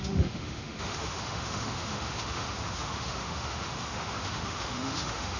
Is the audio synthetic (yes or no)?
yes